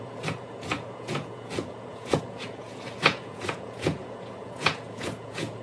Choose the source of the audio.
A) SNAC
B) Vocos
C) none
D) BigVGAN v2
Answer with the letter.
B